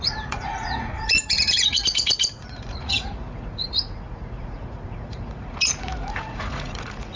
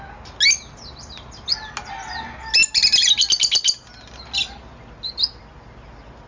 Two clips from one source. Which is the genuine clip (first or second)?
second